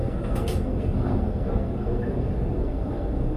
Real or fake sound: fake